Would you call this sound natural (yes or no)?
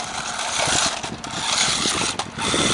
yes